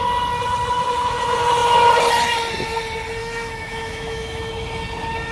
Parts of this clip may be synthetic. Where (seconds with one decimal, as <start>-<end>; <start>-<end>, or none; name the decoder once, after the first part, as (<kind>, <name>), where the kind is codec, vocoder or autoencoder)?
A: 3.2-4.5 (autoencoder, DAC-VAE)